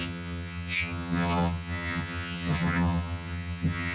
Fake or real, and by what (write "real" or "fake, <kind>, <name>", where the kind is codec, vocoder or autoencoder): fake, vocoder, HiFi-GAN